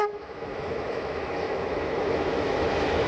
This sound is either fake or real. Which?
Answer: fake